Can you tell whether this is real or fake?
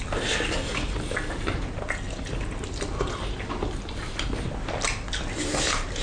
real